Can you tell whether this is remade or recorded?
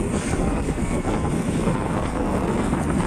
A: remade